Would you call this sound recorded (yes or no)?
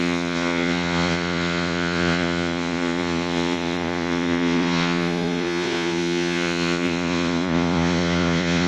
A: no